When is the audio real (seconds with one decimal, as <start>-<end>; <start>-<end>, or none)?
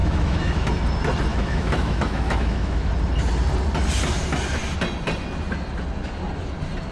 0.7-1.3; 2.9-6.9